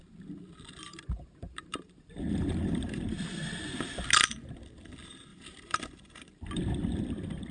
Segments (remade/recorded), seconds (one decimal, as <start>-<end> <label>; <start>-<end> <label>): 0.0-0.9 recorded; 0.9-3.0 remade; 3.0-5.3 recorded; 5.3-6.6 remade; 6.6-7.5 recorded

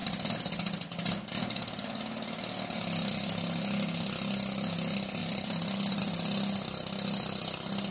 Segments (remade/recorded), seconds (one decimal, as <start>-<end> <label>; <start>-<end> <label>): 0.0-0.9 remade; 0.9-5.2 recorded; 5.2-6.0 remade; 6.0-7.9 recorded

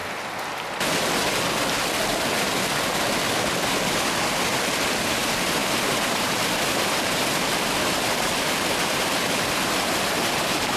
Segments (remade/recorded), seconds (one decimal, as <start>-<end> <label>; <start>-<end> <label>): 0.0-5.6 recorded; 5.6-10.1 remade; 10.1-10.8 recorded

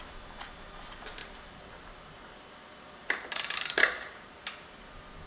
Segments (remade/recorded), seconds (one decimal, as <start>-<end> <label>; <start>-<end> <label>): 0.0-1.2 recorded; 1.2-4.4 remade; 4.4-5.3 recorded

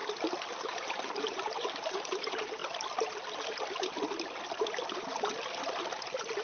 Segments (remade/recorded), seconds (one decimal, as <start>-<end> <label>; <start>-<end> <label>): 0.0-0.6 recorded; 0.6-2.6 remade; 2.6-6.4 recorded

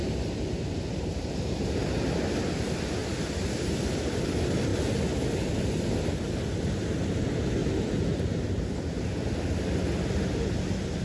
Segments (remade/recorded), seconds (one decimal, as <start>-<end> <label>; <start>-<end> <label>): 0.0-3.0 recorded; 3.0-3.5 remade; 3.5-7.6 recorded; 7.6-9.1 remade; 9.1-11.0 recorded

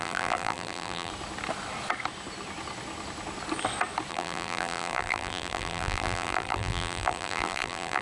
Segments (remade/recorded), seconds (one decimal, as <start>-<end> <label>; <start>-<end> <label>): 0.0-1.1 remade; 1.1-4.1 recorded; 4.1-8.0 remade